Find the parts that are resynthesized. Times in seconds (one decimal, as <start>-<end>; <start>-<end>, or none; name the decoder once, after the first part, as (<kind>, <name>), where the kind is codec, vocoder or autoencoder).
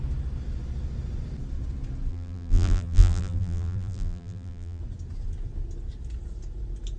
2.1-4.8 (vocoder, BigVGAN v2)